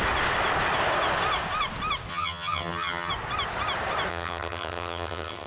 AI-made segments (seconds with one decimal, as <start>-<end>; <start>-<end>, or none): 2.1-3.1; 4.1-5.5